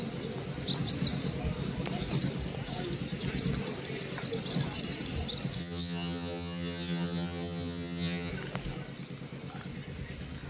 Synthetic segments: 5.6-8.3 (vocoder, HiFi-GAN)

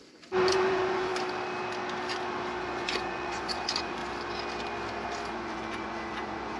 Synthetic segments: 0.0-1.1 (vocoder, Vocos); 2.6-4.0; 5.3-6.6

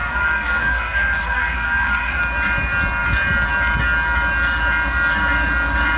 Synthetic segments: 0.0-2.2 (codec, SNAC)

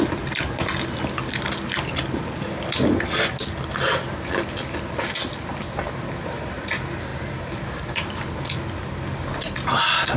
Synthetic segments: none

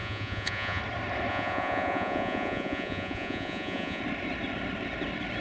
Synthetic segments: 0.0-0.8 (vocoder, Vocos); 1.3-4.0

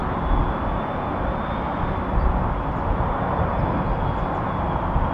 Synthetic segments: none